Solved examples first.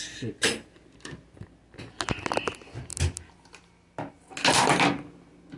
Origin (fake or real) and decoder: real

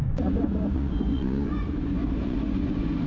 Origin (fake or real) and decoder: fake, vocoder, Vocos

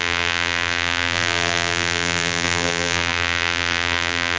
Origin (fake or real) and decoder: fake, vocoder, BigVGAN v2